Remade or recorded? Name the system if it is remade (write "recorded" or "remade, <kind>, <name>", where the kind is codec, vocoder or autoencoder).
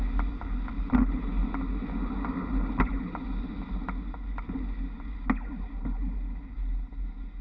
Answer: recorded